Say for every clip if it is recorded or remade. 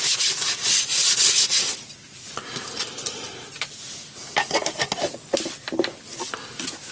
recorded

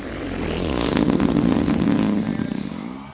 recorded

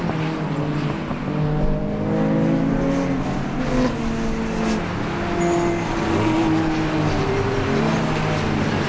recorded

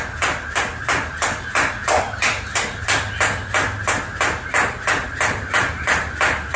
recorded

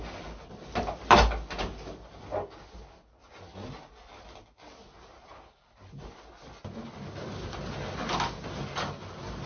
recorded